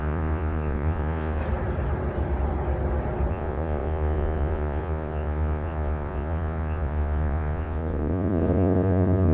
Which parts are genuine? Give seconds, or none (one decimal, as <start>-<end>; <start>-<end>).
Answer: 1.4-3.3